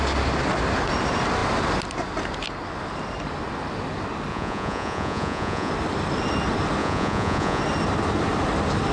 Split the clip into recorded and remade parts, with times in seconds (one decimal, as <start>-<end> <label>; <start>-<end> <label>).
0.0-4.3 recorded; 4.3-5.7 remade; 5.7-6.8 recorded; 6.8-7.6 remade; 7.6-8.9 recorded